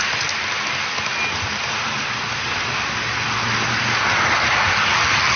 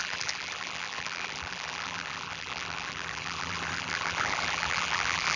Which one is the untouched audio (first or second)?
first